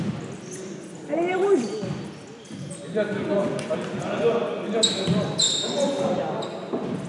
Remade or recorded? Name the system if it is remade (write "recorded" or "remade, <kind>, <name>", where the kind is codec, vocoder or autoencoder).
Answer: recorded